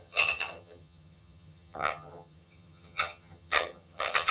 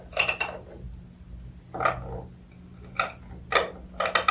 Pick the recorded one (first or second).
second